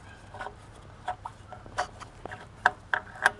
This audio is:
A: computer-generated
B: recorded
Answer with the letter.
B